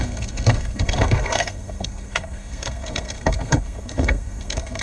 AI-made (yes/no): yes